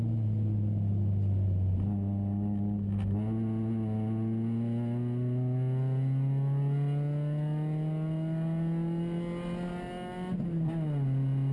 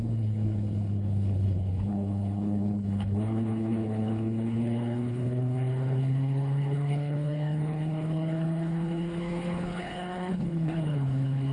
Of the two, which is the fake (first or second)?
second